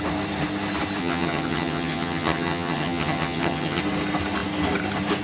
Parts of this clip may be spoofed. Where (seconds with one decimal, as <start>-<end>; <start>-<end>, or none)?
1.0-3.8